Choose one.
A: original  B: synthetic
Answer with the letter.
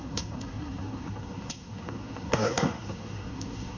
B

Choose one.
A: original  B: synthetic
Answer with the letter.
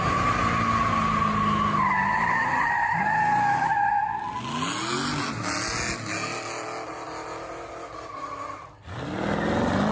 A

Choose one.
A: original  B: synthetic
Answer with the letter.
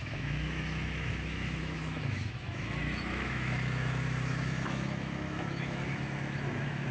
B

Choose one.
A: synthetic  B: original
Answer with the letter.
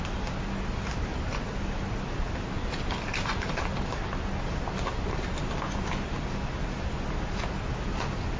B